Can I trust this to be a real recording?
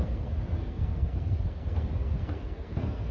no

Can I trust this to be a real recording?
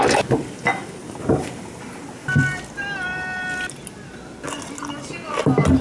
yes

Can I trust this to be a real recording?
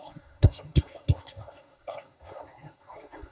no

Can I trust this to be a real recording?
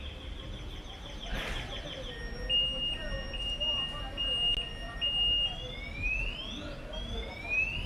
yes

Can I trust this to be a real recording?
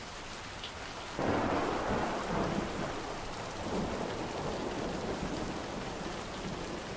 yes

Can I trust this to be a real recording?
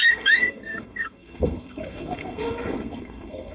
no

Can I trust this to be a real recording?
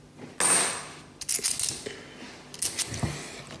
yes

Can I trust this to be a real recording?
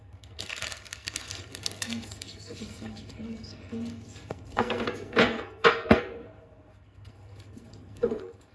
no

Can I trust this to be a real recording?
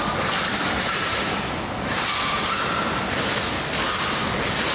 yes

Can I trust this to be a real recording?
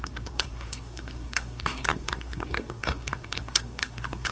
no